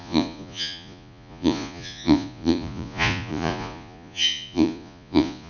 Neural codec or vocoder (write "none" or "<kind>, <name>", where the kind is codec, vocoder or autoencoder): vocoder, Vocos